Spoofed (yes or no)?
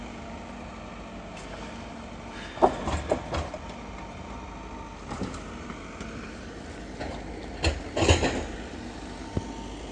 no